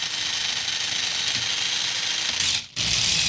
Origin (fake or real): real